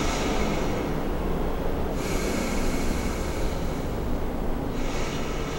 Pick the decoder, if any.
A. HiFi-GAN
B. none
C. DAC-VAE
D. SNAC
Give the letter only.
B